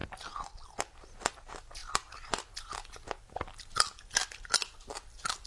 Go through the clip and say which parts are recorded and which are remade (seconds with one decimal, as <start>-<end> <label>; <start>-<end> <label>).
0.0-1.3 remade; 1.3-5.5 recorded